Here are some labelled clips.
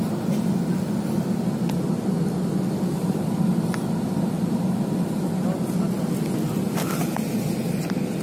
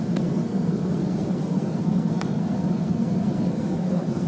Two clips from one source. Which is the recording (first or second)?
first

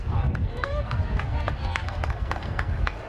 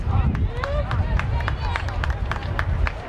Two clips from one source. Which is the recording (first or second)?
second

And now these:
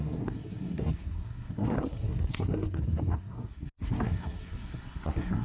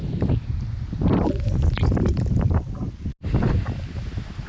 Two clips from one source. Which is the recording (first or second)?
second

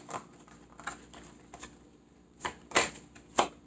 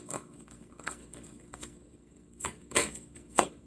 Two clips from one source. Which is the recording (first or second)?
first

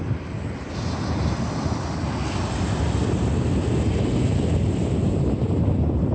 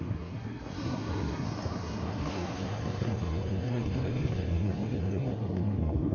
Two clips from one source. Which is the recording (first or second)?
first